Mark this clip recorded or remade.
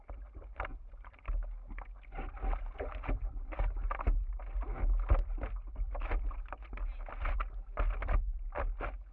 recorded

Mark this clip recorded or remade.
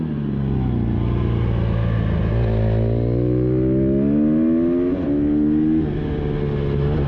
recorded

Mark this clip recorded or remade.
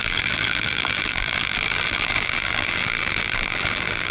remade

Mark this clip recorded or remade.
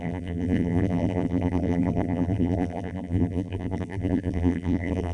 remade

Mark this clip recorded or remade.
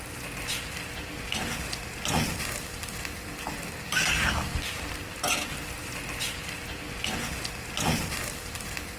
recorded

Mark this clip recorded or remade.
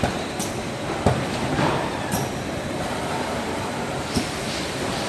remade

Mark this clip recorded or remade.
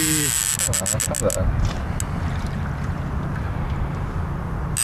recorded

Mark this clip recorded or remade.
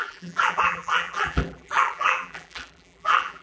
remade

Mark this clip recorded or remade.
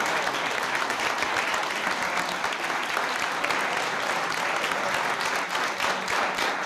recorded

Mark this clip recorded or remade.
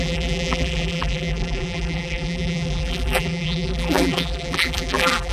remade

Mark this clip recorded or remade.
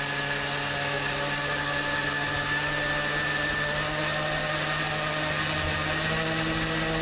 recorded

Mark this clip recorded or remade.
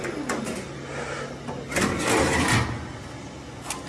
recorded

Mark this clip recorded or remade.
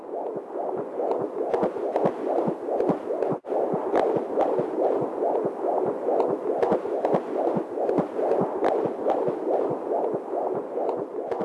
recorded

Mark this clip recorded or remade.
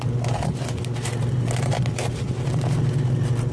remade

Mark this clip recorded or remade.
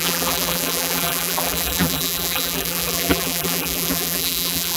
remade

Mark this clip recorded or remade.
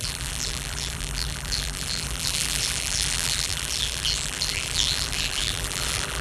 remade